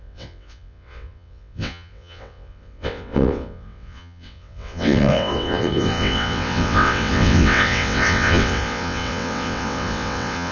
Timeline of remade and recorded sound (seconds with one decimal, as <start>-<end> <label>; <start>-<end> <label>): 0.0-10.5 remade